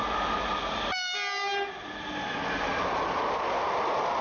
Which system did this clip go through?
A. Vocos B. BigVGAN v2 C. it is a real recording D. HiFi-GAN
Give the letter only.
C